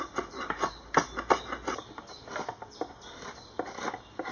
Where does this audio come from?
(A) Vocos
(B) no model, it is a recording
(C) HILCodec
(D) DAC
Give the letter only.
B